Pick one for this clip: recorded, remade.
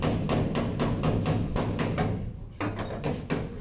recorded